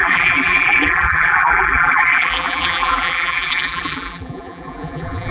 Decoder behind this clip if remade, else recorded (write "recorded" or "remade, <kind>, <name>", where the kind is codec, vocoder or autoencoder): remade, vocoder, BigVGAN v2